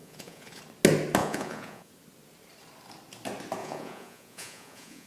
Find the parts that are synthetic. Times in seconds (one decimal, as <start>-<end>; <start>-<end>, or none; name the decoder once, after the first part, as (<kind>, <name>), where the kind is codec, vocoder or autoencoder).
0.0-0.6 (vocoder, Vocos); 1.2-1.9; 3.6-5.1